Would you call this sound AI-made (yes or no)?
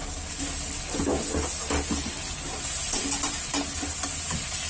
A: no